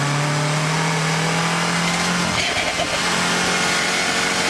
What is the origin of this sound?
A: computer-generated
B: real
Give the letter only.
B